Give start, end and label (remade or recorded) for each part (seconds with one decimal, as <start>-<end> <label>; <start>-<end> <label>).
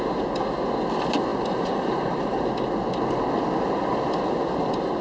0.0-1.3 recorded; 1.3-2.4 remade; 2.4-5.0 recorded